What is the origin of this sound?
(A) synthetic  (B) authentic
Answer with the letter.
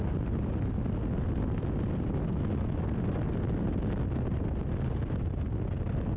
B